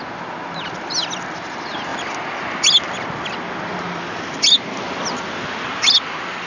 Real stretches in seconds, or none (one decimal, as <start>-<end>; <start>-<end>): 0.0-6.5